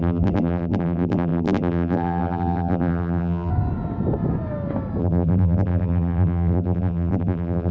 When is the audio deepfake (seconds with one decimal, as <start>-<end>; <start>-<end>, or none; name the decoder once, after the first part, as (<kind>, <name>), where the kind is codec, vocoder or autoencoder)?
0.0-3.5 (vocoder, BigVGAN v2); 5.0-7.7